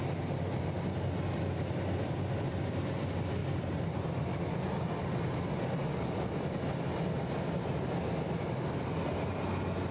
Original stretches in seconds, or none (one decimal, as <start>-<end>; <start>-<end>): 0.0-3.4; 4.4-9.9